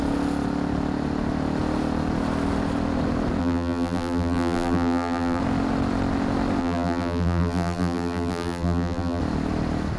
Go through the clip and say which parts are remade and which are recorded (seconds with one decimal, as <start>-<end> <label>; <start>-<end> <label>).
0.0-3.4 recorded; 3.4-5.4 remade; 5.4-6.6 recorded; 6.6-9.2 remade; 9.2-10.0 recorded